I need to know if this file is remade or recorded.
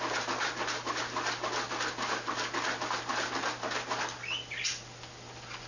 recorded